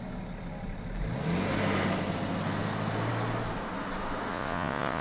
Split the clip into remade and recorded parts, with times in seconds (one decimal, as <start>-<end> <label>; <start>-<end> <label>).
0.0-4.3 recorded; 4.3-5.0 remade